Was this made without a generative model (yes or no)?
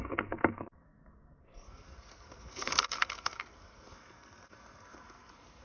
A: no